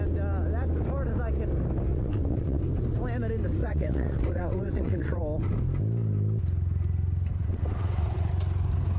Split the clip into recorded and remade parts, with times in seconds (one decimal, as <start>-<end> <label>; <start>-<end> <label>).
0.0-1.9 recorded; 1.9-2.6 remade; 2.6-3.6 recorded; 3.6-5.2 remade; 5.2-7.4 recorded; 7.4-8.3 remade; 8.3-9.0 recorded